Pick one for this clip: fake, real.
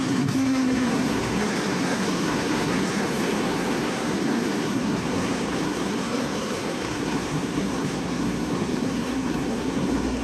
fake